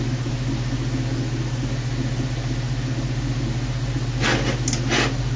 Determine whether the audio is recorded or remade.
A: recorded